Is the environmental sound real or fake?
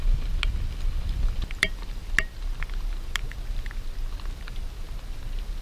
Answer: real